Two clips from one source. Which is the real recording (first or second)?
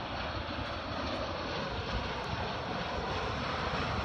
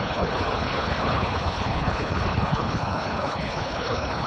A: first